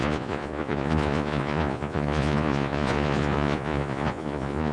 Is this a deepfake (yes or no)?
yes